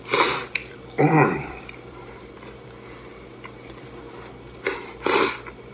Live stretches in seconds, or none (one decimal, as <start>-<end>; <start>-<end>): 0.0-0.6; 2.3-5.7